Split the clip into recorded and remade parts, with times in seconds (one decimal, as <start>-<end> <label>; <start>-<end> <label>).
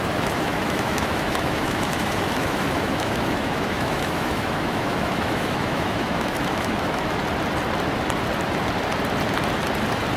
0.0-7.2 remade; 7.2-10.2 recorded